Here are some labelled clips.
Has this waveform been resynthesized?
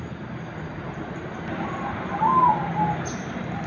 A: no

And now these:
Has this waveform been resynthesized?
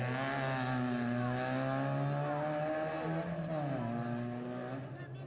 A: no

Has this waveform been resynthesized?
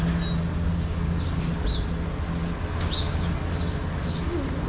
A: no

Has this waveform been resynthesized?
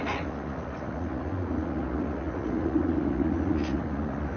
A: yes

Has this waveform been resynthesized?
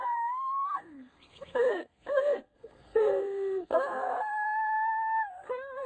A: yes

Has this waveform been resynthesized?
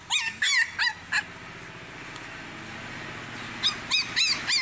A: no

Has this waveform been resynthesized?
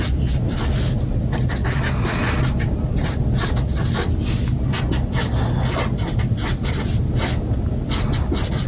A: no